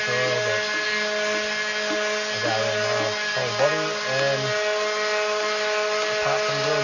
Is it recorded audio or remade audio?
recorded